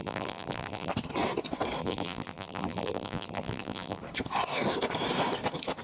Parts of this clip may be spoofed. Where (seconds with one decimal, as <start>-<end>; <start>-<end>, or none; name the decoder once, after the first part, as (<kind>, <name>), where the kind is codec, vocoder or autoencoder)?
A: 0.0-0.9 (vocoder, BigVGAN v2); 1.8-4.0